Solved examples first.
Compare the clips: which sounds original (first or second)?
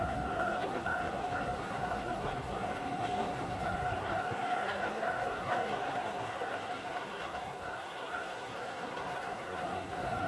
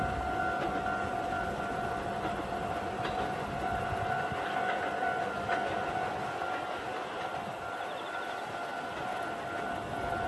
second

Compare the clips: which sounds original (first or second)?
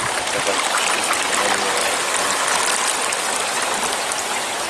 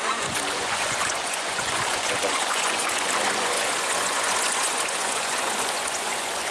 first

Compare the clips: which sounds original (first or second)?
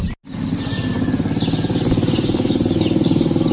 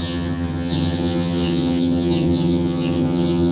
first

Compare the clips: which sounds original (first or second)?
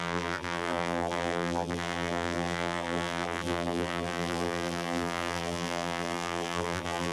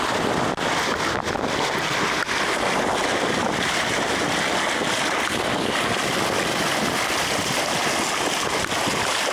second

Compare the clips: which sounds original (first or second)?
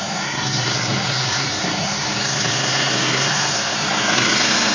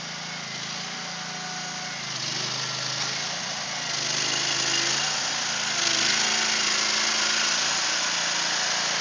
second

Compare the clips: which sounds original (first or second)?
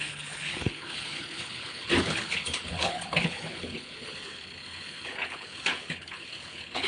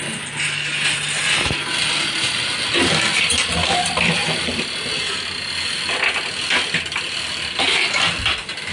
second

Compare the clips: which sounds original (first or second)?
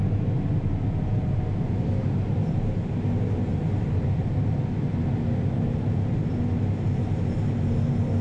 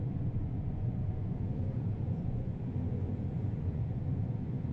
first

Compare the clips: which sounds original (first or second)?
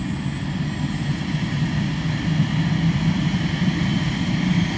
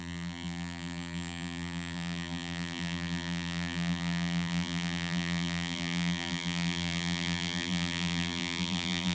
first